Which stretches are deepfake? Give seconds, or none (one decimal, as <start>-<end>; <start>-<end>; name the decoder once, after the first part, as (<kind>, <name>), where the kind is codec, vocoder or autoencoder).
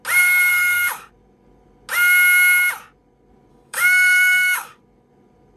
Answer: 0.5-1.1 (codec, DAC); 3.5-4.8